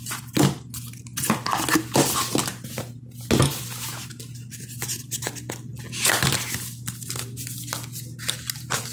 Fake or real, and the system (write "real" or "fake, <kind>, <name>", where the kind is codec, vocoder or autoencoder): real